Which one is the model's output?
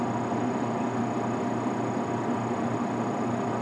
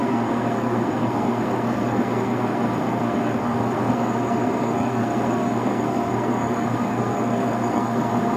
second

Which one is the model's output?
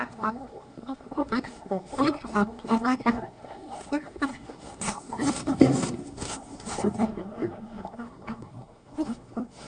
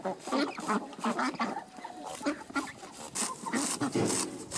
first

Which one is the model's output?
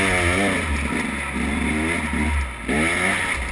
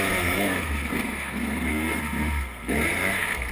second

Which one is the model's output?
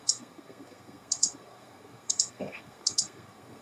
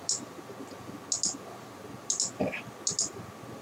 first